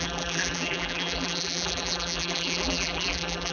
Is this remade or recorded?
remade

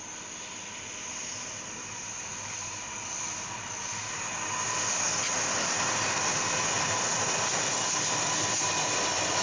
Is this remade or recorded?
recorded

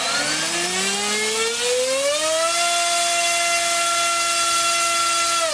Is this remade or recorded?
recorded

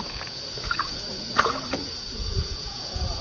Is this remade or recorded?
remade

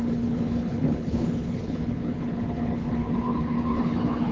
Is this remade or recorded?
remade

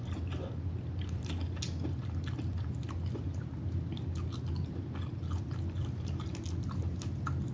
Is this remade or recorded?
recorded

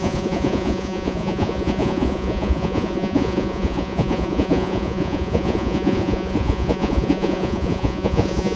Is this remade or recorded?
remade